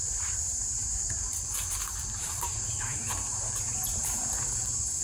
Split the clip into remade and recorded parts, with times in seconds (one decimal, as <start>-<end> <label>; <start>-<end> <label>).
0.0-0.9 remade; 0.9-1.7 recorded; 1.7-5.0 remade